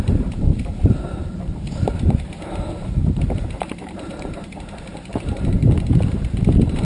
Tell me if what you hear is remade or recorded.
remade